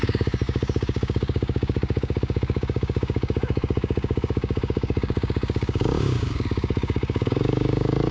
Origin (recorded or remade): remade